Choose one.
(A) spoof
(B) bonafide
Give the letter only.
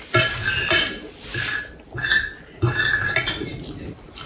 B